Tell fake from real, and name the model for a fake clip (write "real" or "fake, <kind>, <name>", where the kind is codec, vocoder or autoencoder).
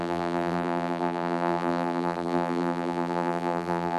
fake, vocoder, BigVGAN v2